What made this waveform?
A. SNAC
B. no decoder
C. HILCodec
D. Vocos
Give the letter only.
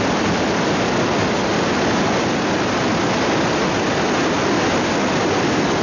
B